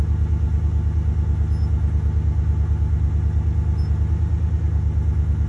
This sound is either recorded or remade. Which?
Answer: recorded